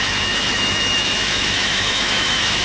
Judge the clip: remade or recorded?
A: remade